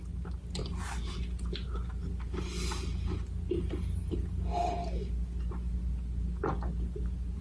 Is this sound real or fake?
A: real